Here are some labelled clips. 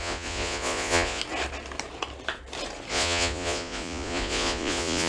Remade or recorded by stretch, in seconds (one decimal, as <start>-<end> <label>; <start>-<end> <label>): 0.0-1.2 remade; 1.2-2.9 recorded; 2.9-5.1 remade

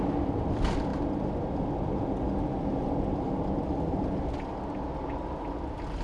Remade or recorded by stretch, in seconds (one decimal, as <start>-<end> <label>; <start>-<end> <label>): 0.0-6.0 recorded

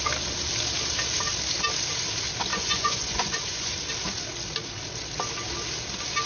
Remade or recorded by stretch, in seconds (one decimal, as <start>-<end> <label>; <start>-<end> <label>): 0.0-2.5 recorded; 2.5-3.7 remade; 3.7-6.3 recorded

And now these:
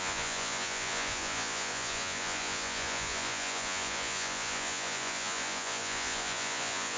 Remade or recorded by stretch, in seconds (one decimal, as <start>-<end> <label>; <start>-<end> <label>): 0.0-7.0 remade

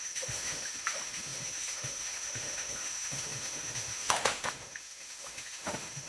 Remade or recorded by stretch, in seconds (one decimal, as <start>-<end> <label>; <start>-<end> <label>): 0.0-6.1 remade

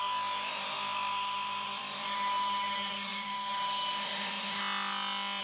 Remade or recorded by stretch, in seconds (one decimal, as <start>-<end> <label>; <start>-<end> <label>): 0.0-4.6 remade; 4.6-5.4 recorded